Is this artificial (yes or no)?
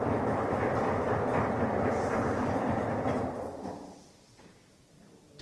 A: no